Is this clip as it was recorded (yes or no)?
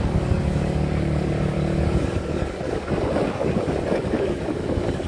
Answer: no